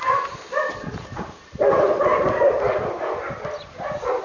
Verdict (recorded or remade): remade